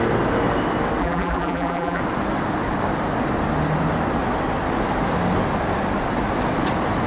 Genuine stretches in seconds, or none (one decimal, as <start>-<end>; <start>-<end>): 0.0-1.0; 2.0-7.1